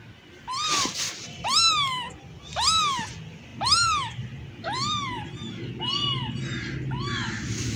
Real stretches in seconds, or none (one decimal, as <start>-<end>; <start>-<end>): 0.0-7.8

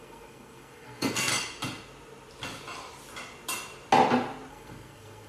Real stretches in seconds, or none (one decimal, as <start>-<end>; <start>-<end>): 1.3-4.5